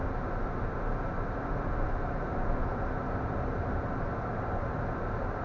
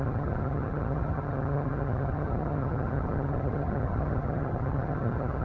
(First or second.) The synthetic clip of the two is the second